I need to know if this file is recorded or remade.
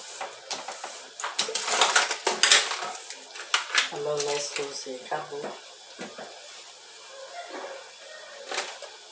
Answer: recorded